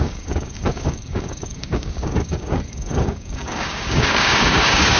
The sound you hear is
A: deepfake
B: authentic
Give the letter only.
A